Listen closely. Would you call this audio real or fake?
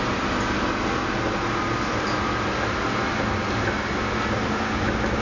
real